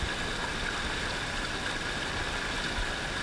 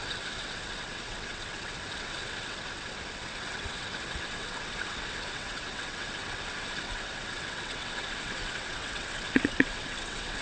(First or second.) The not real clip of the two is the second